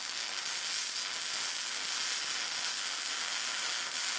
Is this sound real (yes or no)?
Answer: yes